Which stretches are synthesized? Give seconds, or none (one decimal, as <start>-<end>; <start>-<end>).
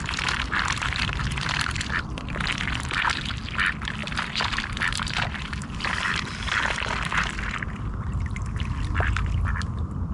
0.0-10.1